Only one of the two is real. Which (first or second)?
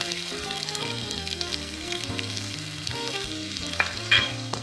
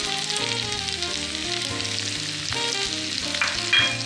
second